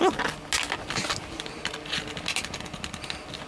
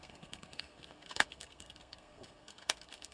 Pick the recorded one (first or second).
first